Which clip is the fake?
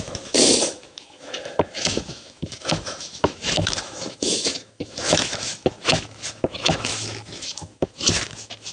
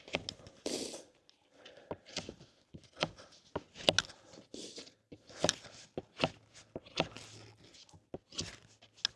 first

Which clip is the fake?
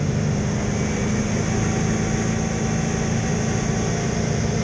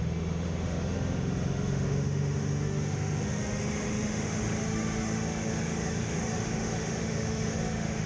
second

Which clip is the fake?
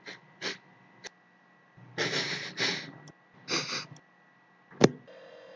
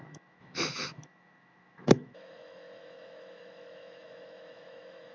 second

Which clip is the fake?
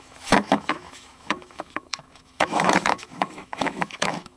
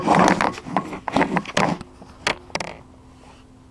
first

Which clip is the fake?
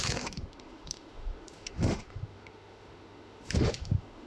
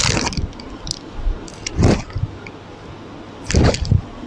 first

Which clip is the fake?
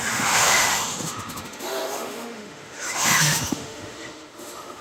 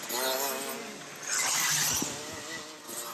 first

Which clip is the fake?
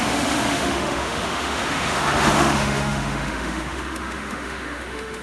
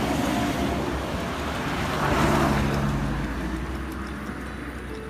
first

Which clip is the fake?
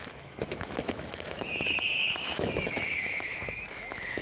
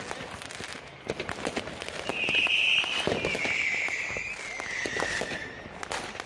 first